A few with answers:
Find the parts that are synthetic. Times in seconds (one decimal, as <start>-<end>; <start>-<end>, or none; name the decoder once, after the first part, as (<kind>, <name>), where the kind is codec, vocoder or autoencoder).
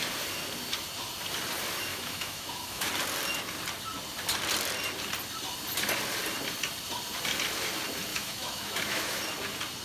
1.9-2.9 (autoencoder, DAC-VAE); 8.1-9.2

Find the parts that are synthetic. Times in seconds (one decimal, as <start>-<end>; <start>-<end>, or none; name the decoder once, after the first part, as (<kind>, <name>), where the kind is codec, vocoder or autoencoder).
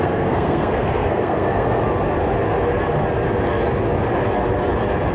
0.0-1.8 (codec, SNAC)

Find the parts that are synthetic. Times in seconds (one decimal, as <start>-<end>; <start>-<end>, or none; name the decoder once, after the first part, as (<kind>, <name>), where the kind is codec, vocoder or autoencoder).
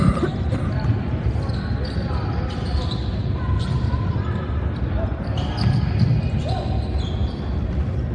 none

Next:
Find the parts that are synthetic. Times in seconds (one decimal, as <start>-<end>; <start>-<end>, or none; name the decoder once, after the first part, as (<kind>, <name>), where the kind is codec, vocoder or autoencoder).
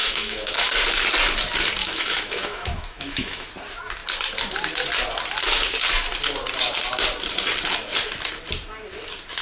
0.0-0.7 (autoencoder, DAC-VAE); 1.8-3.5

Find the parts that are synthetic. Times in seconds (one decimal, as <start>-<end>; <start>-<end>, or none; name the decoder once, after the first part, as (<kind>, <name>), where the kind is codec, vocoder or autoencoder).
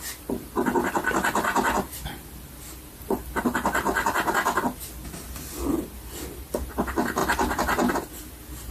none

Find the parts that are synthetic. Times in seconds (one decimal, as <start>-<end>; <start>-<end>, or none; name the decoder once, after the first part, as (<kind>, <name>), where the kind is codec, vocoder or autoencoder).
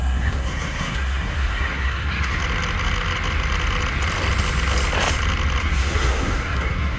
0.0-2.4 (codec, SNAC); 5.6-7.0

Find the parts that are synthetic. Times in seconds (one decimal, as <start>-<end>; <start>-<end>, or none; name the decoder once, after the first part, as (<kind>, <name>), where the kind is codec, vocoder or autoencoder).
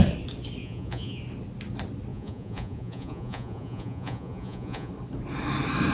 0.6-1.2 (vocoder, Vocos); 2.1-4.9